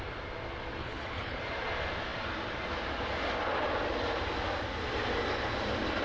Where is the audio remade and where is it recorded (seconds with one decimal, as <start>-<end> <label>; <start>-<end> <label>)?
0.0-0.8 recorded; 0.8-1.4 remade; 1.4-6.0 recorded

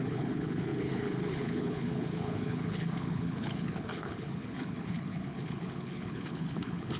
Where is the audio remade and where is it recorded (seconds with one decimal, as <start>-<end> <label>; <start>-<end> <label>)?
0.0-7.0 remade